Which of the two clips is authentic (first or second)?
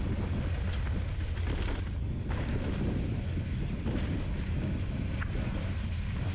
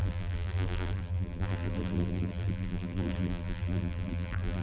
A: first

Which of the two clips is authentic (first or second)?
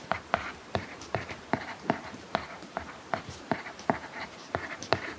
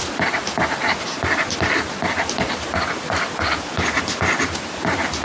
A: second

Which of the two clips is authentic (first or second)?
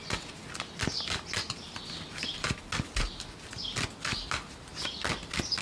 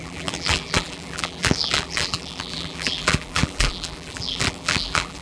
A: first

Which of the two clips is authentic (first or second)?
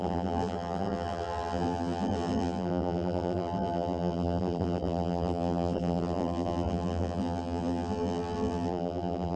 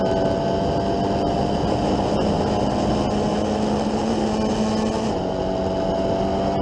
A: second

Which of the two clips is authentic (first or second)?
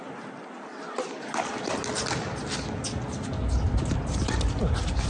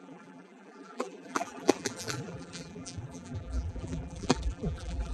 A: first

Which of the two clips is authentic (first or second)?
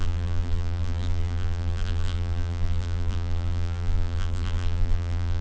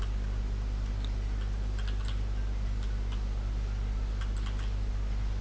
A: second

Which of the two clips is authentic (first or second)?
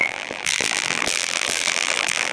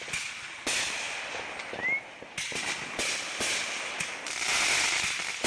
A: second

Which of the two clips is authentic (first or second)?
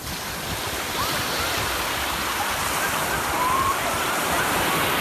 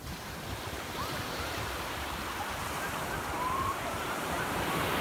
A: first